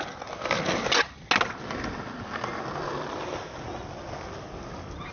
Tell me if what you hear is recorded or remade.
recorded